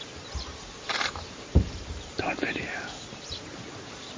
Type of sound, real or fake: fake